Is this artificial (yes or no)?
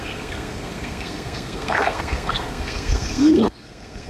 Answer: yes